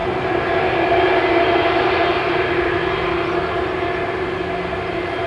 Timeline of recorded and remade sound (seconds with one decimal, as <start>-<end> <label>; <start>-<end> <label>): 0.0-5.3 recorded